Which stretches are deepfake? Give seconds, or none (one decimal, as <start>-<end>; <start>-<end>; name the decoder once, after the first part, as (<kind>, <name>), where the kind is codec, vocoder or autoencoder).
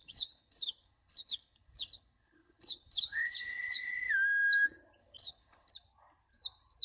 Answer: 0.0-4.1 (codec, HILCodec); 5.0-5.7